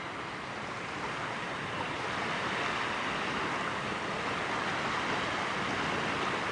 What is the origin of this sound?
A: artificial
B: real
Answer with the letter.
B